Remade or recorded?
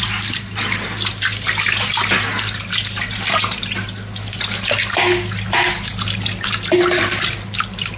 recorded